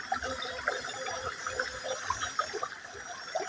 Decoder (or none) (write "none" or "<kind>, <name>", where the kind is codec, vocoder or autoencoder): vocoder, BigVGAN v2